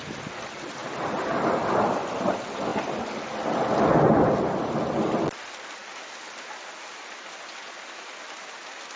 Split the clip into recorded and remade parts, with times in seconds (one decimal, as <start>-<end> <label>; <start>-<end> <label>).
0.0-9.0 recorded